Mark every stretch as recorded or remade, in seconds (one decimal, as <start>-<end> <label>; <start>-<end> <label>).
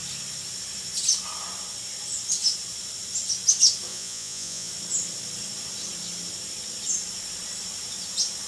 0.0-3.9 recorded; 3.9-4.7 remade; 4.7-8.5 recorded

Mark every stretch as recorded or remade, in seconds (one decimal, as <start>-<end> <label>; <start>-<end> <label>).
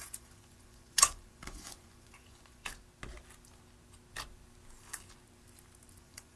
0.0-2.6 remade; 2.6-6.0 recorded; 6.0-6.4 remade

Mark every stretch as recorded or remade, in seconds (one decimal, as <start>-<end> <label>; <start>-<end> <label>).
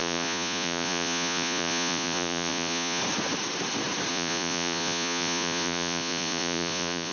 0.0-3.0 remade; 3.0-4.1 recorded; 4.1-7.1 remade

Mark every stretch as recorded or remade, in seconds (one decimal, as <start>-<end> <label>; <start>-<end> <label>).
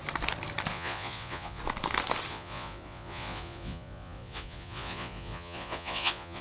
0.0-0.7 recorded; 0.7-1.6 remade; 1.6-2.3 recorded; 2.3-6.4 remade